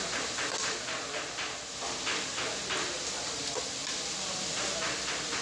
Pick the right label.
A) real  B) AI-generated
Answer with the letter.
A